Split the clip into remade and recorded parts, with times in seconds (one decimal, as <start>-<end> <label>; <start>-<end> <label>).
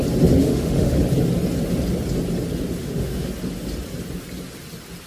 0.0-0.4 recorded; 0.4-1.0 remade; 1.0-2.8 recorded; 2.8-3.3 remade; 3.3-5.1 recorded